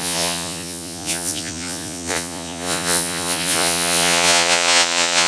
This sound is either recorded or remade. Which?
remade